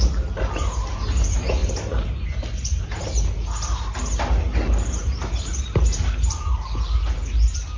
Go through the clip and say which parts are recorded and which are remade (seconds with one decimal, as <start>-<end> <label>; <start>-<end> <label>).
0.0-7.8 recorded